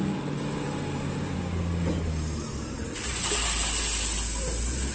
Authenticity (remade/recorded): recorded